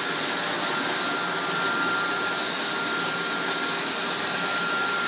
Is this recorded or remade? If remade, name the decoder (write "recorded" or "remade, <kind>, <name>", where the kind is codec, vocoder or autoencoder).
recorded